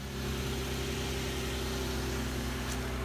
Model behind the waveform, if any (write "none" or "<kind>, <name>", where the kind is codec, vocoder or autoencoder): none